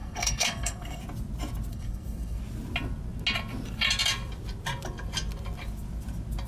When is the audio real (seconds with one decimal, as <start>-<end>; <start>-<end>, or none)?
1.0-1.7; 2.4-6.5